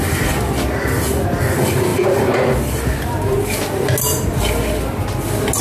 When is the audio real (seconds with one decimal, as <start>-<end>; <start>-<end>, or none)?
0.0-5.6